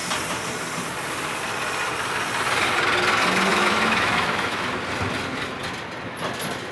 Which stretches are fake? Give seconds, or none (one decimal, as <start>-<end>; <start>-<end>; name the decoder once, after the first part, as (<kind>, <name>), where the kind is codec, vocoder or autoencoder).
3.5-4.7 (autoencoder, DAC-VAE)